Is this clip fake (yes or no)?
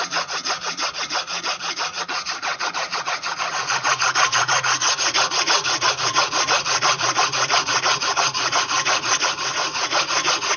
yes